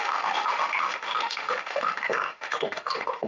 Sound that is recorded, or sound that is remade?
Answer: remade